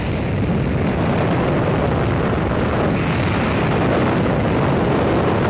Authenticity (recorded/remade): recorded